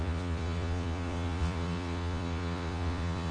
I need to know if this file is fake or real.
fake